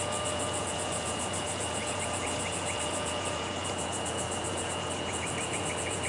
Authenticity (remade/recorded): remade